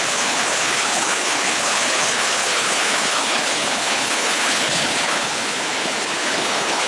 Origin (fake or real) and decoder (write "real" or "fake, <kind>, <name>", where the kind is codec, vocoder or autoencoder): fake, codec, HILCodec